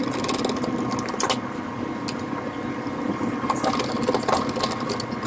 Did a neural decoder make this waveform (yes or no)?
no